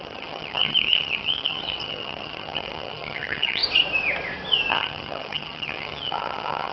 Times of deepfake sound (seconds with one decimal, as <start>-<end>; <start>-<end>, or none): 0.0-3.6; 4.7-6.7

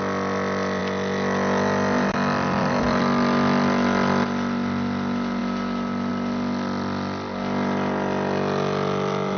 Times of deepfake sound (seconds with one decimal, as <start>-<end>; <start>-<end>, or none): none